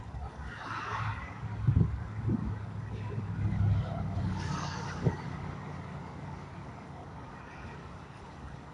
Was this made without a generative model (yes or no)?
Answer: no